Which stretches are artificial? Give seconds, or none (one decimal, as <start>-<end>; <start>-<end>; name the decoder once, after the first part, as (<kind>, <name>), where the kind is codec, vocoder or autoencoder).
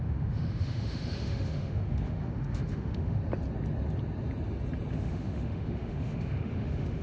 0.0-3.2 (autoencoder, DAC-VAE); 4.9-7.0